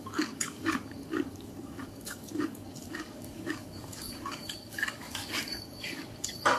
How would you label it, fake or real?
fake